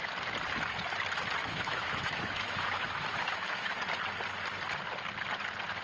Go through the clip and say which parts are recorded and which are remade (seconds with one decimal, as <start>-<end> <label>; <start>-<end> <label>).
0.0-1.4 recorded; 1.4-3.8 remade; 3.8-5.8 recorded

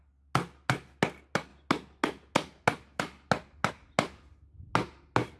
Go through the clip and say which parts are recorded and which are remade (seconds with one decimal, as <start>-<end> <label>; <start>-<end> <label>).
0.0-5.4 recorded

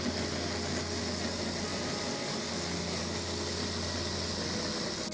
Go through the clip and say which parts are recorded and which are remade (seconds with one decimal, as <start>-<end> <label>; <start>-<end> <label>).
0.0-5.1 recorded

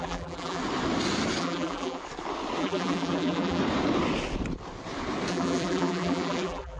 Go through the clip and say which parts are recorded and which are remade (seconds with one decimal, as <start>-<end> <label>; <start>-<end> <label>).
0.0-0.6 remade; 0.6-1.4 recorded; 1.4-2.0 remade; 2.0-2.6 recorded; 2.6-3.6 remade; 3.6-5.3 recorded; 5.3-6.8 remade

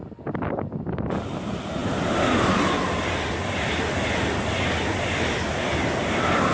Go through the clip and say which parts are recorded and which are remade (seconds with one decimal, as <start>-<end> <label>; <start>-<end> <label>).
0.0-6.5 recorded